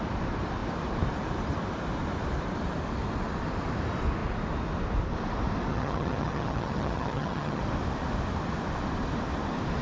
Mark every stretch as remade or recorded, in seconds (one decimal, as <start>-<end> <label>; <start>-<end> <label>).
0.0-5.7 recorded; 5.7-7.6 remade; 7.6-9.8 recorded